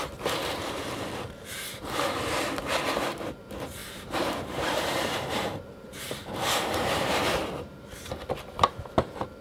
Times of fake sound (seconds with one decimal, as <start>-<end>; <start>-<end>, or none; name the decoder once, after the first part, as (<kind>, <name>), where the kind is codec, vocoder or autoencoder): 3.8-8.1 (vocoder, BigVGAN v2)